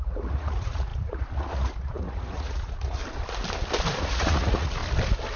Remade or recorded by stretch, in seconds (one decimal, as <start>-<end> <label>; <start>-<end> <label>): 0.0-3.0 remade; 3.0-4.0 recorded; 4.0-4.8 remade; 4.8-5.4 recorded